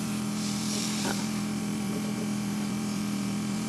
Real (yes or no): no